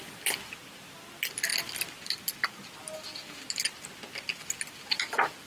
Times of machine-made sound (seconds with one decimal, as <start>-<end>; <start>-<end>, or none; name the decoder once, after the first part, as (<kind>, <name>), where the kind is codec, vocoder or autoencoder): none